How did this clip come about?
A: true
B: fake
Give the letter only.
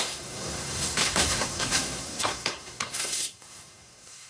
B